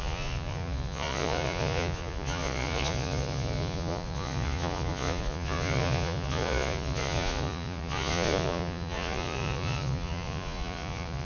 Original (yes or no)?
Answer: no